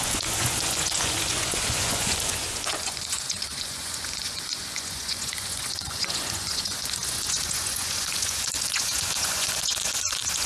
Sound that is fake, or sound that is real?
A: fake